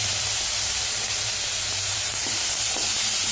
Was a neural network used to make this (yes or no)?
yes